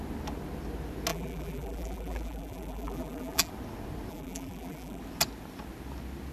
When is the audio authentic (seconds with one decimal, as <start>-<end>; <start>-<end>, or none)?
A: 0.0-1.1; 3.5-4.1; 5.0-6.3

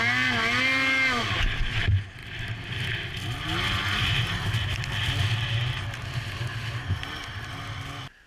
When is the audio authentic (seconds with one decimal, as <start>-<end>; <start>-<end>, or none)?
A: 0.0-6.6; 7.1-8.3

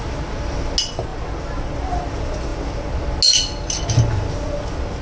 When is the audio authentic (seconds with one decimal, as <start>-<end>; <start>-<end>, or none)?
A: 0.0-5.0

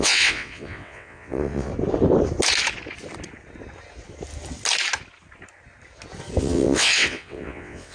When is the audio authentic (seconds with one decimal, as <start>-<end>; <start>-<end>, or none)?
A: 1.7-6.4